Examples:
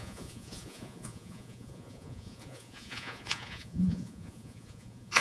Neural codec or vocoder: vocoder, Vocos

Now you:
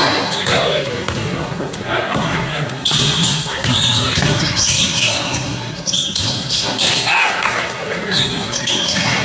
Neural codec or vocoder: codec, SNAC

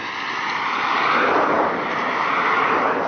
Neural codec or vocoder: none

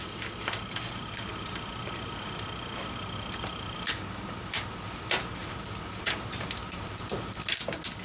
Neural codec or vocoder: none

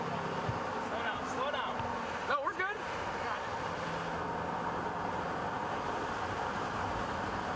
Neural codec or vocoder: none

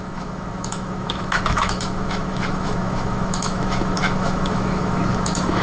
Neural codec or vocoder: autoencoder, DAC-VAE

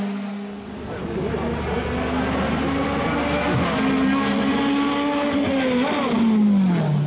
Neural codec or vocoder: none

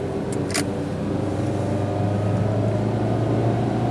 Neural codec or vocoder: none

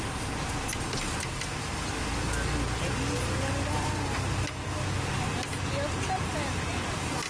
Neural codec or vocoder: none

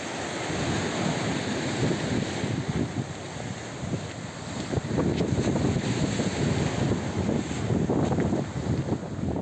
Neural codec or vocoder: none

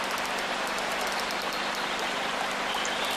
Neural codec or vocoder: vocoder, BigVGAN v2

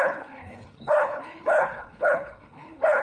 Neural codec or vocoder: codec, HILCodec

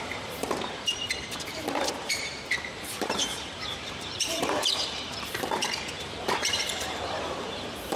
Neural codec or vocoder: vocoder, BigVGAN v2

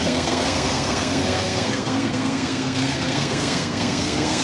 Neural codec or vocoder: codec, SNAC